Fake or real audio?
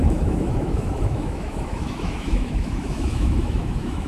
fake